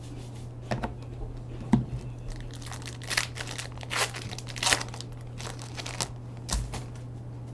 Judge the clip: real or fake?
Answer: real